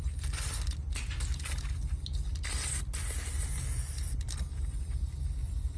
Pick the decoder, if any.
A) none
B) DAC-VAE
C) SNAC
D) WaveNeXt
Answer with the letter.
A